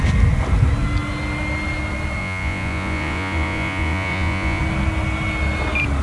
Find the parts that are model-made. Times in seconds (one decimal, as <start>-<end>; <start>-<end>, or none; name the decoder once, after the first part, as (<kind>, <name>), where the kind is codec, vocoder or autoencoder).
2.2-4.6 (vocoder, Vocos)